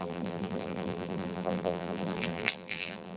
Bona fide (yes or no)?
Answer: no